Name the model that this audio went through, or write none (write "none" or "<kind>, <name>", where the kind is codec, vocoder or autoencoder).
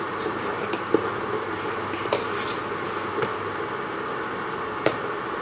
vocoder, BigVGAN v2